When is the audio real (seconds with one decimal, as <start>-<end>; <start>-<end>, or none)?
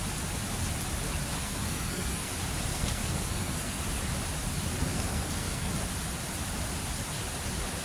0.0-1.4; 2.3-2.7; 3.8-4.7; 5.7-7.8